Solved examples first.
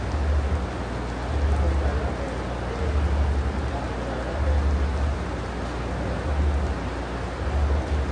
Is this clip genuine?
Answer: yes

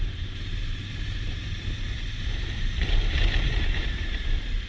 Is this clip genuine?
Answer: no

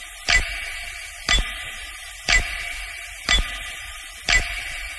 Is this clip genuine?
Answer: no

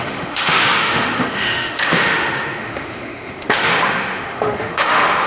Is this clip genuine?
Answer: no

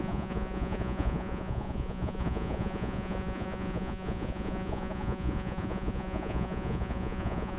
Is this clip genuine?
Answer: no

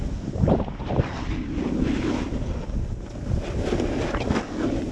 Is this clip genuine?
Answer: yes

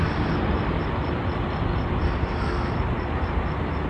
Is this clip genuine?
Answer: yes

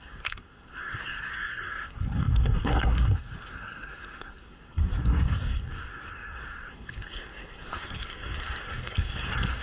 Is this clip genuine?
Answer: no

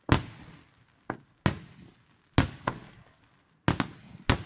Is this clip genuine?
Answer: yes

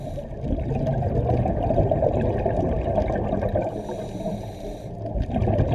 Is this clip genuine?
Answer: yes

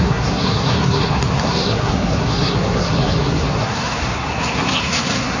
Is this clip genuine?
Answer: no